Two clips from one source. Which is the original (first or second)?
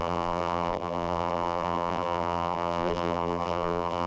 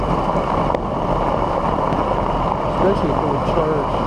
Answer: second